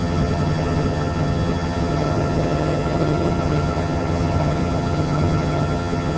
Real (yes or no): no